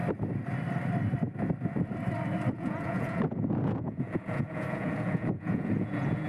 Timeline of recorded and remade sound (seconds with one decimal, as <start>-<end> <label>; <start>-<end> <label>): 0.0-2.5 recorded; 2.5-6.3 remade